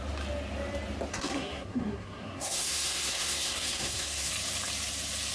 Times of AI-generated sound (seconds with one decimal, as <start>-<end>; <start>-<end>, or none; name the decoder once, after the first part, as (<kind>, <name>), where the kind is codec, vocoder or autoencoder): 1.1-4.3 (codec, SNAC)